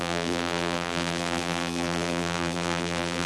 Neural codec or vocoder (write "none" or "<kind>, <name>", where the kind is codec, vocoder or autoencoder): vocoder, BigVGAN v2